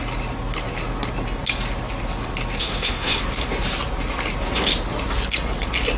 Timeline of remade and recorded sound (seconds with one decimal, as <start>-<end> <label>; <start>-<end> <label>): 0.0-2.6 recorded; 2.6-3.2 remade; 3.2-6.0 recorded